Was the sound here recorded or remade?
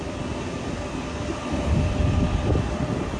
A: remade